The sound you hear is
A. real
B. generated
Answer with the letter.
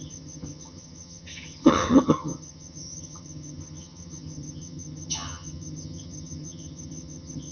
B